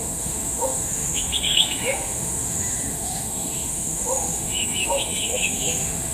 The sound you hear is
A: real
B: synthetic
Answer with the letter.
B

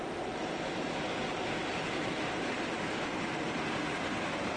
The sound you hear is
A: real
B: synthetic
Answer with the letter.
A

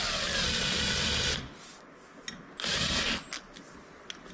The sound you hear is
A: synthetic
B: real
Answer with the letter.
B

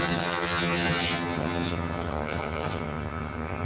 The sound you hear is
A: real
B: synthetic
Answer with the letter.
B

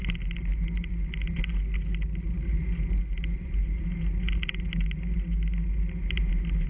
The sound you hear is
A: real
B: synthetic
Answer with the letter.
A